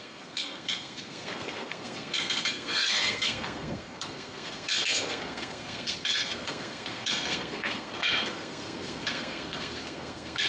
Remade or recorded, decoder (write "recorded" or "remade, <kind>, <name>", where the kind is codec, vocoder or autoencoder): remade, codec, SNAC